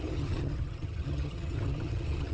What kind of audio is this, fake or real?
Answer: fake